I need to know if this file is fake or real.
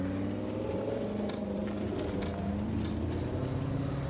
real